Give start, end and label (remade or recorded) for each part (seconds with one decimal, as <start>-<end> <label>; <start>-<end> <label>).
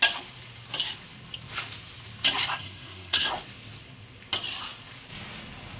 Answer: 0.0-2.5 recorded; 2.5-3.3 remade; 3.3-5.8 recorded